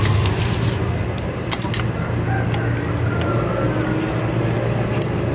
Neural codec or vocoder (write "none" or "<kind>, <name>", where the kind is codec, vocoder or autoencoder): none